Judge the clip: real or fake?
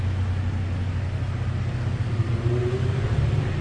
real